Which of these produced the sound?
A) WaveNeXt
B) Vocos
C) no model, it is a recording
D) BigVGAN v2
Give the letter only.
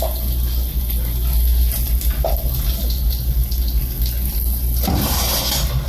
C